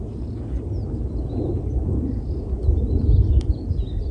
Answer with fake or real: real